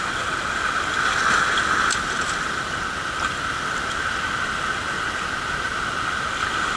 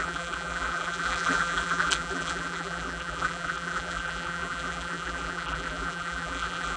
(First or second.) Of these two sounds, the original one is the first